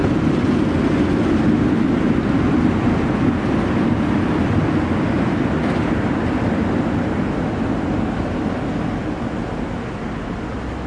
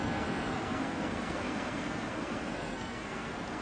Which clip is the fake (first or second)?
second